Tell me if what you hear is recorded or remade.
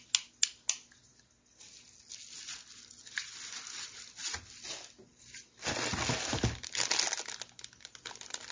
recorded